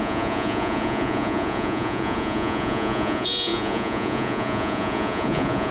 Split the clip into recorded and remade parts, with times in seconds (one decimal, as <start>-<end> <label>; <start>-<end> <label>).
0.0-5.7 remade